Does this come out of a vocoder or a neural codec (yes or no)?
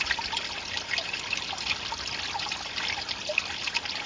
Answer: no